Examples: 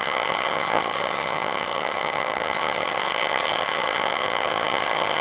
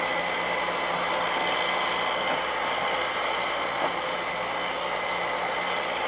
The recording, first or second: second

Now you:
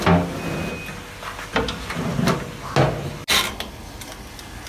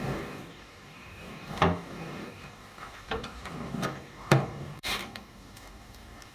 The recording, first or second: first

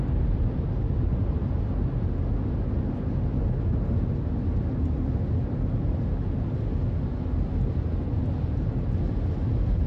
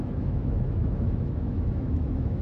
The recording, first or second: first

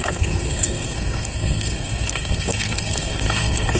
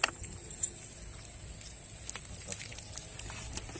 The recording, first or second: second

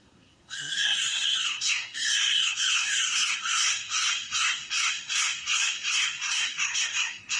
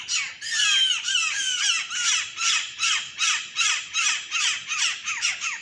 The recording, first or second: second